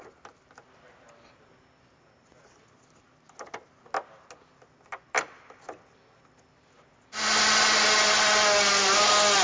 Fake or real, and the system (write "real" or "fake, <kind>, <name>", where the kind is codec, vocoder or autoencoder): real